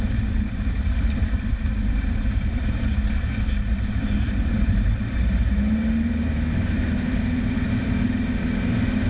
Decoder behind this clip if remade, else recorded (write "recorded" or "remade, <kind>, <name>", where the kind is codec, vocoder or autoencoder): remade, vocoder, BigVGAN v2